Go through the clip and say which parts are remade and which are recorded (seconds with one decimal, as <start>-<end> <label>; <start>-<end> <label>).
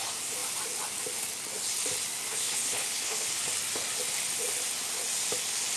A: 0.0-2.3 recorded; 2.3-3.4 remade; 3.4-5.8 recorded